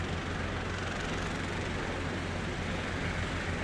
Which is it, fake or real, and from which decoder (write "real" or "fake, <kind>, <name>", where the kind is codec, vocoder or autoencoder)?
real